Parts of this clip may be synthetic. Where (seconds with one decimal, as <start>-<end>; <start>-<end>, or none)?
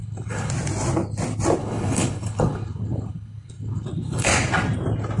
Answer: 0.0-0.5; 1.6-4.3